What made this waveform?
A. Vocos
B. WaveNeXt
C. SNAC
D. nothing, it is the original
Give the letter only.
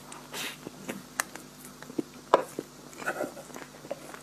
D